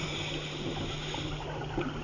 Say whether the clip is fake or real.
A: real